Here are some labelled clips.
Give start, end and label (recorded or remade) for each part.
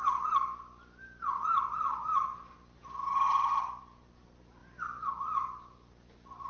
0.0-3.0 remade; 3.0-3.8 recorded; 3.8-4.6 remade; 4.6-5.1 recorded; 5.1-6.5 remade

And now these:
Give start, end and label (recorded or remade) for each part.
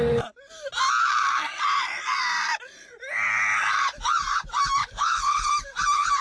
0.0-4.8 recorded; 4.8-5.5 remade; 5.5-6.2 recorded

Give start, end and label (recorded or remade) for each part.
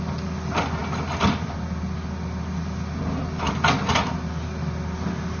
0.0-5.4 recorded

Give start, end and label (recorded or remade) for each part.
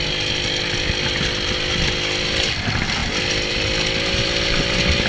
0.0-5.1 recorded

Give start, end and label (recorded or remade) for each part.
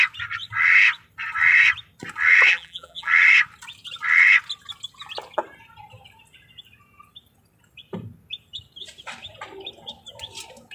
0.0-2.5 recorded; 2.5-3.1 remade; 3.1-10.7 recorded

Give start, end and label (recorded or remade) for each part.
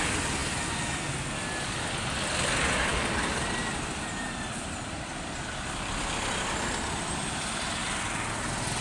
0.0-2.9 recorded; 2.9-7.2 remade; 7.2-8.8 recorded